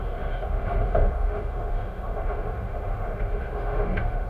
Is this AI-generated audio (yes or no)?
yes